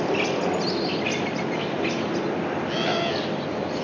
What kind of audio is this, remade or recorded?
recorded